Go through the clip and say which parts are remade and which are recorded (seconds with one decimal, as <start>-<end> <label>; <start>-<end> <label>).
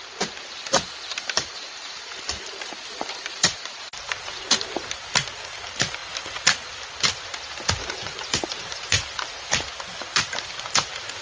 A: 0.0-1.1 recorded; 1.1-4.1 remade; 4.1-7.8 recorded; 7.8-8.8 remade; 8.8-11.2 recorded